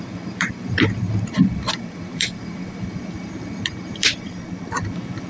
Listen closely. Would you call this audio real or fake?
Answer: fake